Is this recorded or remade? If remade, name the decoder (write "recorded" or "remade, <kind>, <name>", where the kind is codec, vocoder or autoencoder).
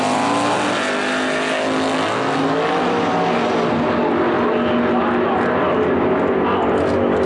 recorded